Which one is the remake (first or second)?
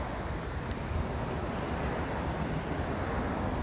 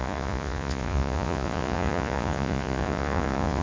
second